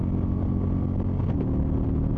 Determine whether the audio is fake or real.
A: real